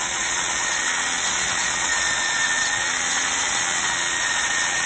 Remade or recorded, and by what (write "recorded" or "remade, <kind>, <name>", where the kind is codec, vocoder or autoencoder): remade, vocoder, Vocos